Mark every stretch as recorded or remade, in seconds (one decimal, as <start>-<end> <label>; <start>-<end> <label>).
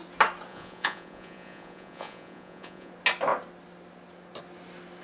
0.0-0.5 recorded; 0.5-2.9 remade; 2.9-5.0 recorded